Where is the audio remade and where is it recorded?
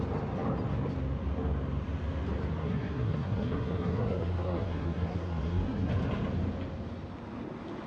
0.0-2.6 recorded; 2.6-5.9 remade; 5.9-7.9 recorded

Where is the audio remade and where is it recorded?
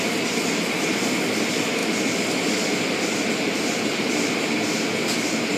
0.0-5.6 recorded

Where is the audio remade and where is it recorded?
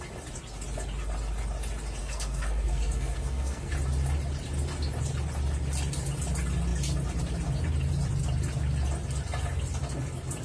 0.0-2.0 recorded; 2.0-3.7 remade; 3.7-10.4 recorded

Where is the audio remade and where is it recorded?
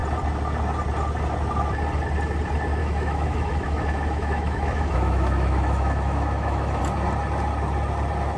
0.0-2.8 recorded; 2.8-6.8 remade; 6.8-8.4 recorded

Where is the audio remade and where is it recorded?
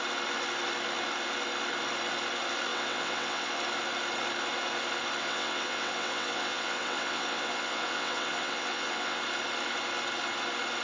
0.0-2.7 recorded; 2.7-3.5 remade; 3.5-5.2 recorded; 5.2-9.2 remade; 9.2-10.8 recorded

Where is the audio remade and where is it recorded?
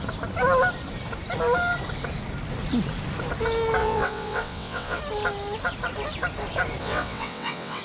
0.0-3.8 recorded; 3.8-5.0 remade; 5.0-6.8 recorded; 6.8-7.8 remade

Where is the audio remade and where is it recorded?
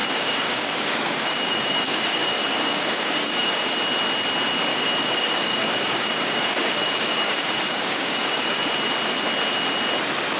0.0-3.7 remade; 3.7-4.7 recorded; 4.7-8.6 remade; 8.6-10.4 recorded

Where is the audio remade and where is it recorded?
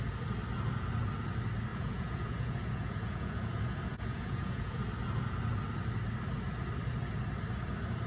0.0-1.7 recorded; 1.7-4.8 remade; 4.8-8.1 recorded